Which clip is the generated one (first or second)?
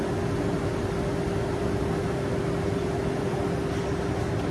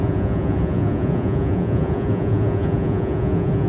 second